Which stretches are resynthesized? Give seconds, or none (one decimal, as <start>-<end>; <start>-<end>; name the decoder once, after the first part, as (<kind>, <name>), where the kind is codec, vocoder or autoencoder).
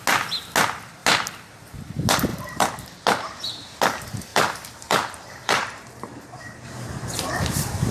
2.3-2.8 (vocoder, BigVGAN v2); 4.3-7.3